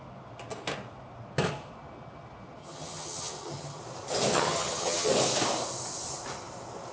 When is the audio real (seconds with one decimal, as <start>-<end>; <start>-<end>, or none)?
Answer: 0.0-2.6; 3.8-4.3; 5.1-6.9